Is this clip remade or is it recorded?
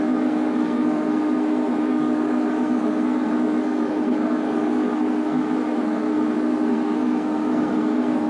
remade